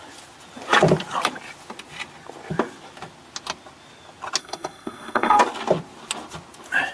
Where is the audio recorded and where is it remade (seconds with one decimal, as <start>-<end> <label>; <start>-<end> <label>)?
0.0-4.4 recorded; 4.4-5.4 remade; 5.4-6.9 recorded